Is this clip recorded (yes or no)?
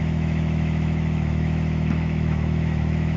no